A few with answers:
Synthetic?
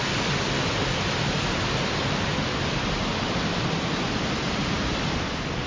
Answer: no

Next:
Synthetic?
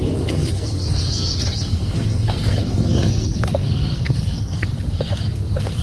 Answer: yes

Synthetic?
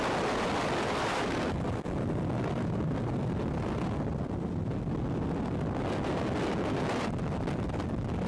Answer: no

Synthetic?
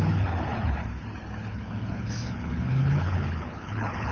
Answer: yes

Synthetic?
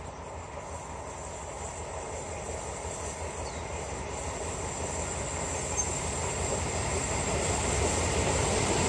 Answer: no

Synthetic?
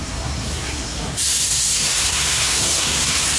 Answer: yes